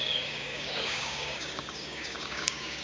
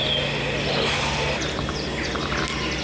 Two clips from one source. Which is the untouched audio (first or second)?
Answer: second